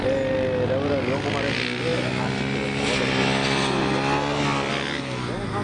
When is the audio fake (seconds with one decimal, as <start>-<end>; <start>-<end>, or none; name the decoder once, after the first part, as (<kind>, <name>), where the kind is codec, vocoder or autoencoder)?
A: none